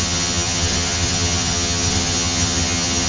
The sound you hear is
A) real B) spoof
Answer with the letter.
B